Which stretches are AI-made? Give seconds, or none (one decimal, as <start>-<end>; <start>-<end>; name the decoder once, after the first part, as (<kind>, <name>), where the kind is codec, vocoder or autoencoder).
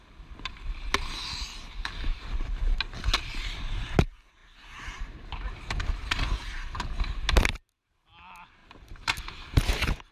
none